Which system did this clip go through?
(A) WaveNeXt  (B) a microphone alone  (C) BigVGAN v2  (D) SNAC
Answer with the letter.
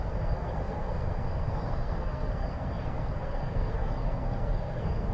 D